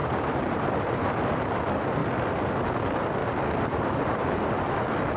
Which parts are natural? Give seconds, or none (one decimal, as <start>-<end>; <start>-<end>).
1.6-2.0; 2.5-3.2; 4.4-5.2